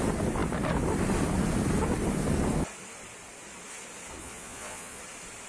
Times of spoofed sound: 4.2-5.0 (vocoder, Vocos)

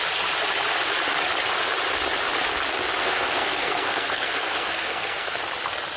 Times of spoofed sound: 3.0-5.4 (codec, SNAC)

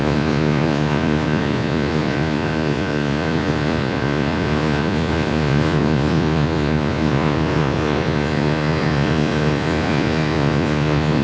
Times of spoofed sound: 0.0-11.2 (vocoder, Vocos)